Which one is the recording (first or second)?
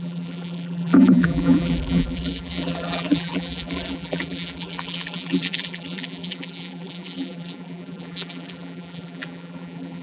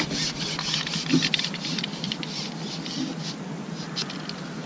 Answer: second